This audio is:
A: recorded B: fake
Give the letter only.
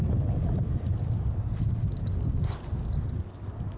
A